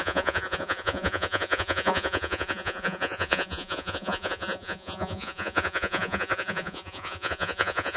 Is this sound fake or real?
fake